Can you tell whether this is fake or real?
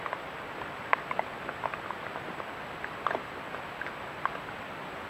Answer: fake